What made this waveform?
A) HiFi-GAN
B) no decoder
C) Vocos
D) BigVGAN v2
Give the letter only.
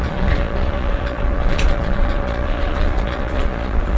C